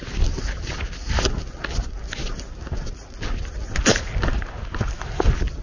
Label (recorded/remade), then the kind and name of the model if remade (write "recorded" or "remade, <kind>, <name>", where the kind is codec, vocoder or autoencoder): recorded